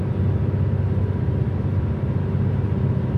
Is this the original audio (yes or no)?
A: yes